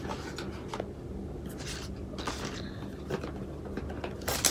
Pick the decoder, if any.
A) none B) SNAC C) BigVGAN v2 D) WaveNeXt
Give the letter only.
A